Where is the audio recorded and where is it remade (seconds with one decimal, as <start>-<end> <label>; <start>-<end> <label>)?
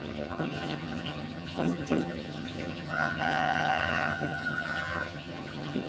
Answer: 0.0-5.9 remade